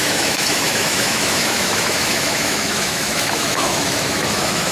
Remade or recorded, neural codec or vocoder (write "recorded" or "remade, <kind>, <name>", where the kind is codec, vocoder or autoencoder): remade, autoencoder, DAC-VAE